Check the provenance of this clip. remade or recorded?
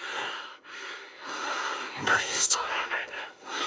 remade